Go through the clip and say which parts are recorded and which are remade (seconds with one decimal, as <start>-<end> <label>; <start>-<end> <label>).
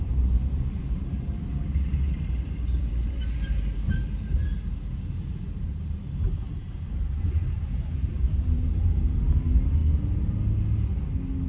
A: 0.0-9.8 remade; 9.8-11.5 recorded